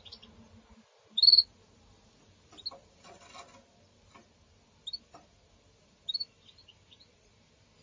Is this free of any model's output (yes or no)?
yes